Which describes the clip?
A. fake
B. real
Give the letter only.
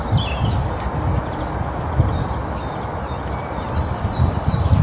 B